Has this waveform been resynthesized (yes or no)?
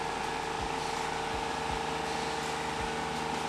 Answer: no